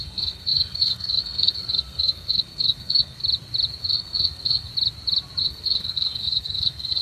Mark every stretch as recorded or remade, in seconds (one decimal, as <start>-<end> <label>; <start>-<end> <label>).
0.0-3.2 remade; 3.2-3.8 recorded; 3.8-4.7 remade; 4.7-5.4 recorded; 5.4-7.0 remade